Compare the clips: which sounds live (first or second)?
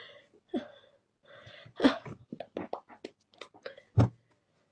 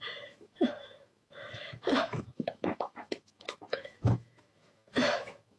first